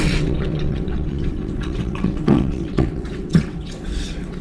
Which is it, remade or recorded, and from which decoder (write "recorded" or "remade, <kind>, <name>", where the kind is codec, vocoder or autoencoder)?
remade, vocoder, WaveNeXt